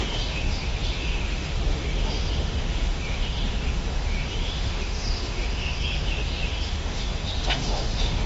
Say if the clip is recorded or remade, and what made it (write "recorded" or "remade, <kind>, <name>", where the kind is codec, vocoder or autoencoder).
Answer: remade, autoencoder, DAC-VAE